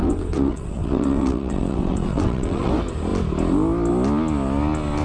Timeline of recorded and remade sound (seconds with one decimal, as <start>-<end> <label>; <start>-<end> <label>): 0.0-2.7 remade; 2.7-5.0 recorded